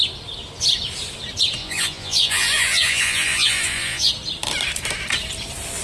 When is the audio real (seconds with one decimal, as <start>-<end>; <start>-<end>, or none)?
0.0-1.6; 4.1-5.8